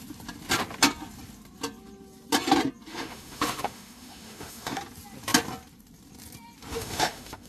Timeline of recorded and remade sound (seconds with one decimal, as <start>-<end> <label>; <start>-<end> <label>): 0.0-2.9 recorded; 2.9-4.8 remade; 4.8-6.7 recorded; 6.7-7.5 remade